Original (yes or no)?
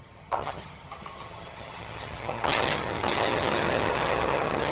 no